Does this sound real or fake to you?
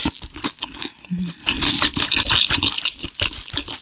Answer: real